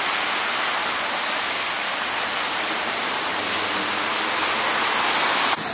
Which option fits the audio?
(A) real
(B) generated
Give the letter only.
A